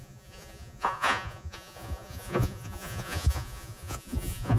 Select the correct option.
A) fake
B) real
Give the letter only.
A